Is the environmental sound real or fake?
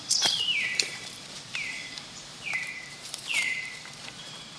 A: fake